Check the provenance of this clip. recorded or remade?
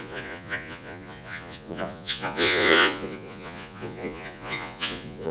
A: remade